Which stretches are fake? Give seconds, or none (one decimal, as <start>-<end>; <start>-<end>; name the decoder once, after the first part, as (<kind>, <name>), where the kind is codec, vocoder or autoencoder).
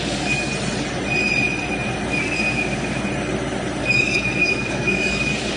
0.0-0.5 (codec, DAC); 3.8-5.6